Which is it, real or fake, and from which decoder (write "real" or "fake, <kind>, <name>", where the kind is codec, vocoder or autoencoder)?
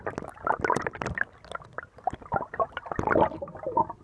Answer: real